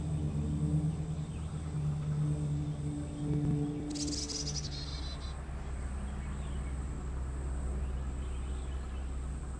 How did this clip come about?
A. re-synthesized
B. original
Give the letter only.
B